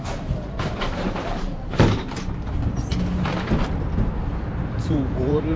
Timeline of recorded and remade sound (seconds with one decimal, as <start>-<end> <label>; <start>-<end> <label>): 0.0-2.9 remade; 2.9-4.5 recorded; 4.5-5.6 remade